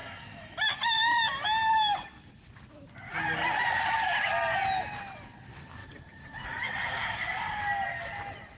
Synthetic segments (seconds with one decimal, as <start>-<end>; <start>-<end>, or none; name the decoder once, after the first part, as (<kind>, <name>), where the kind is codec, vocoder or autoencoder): 5.8-7.3 (vocoder, Vocos)